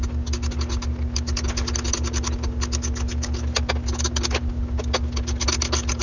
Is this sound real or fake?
real